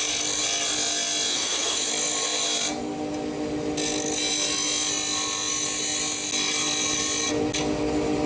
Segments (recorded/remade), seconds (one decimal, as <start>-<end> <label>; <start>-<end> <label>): 0.0-1.3 recorded; 1.3-1.9 remade; 1.9-8.3 recorded